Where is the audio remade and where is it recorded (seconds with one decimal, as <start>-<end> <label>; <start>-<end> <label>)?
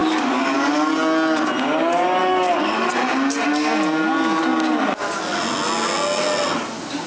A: 0.0-0.9 remade; 0.9-2.2 recorded; 2.2-2.9 remade; 2.9-7.1 recorded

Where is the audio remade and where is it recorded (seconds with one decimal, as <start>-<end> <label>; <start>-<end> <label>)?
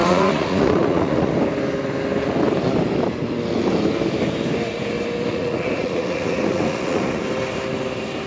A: 0.0-1.3 remade; 1.3-5.3 recorded; 5.3-7.2 remade; 7.2-8.3 recorded